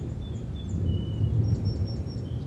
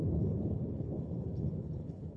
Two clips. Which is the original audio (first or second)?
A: first